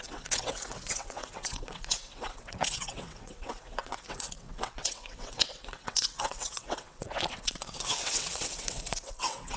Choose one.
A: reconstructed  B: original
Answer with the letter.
A